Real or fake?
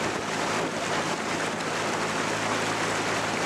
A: real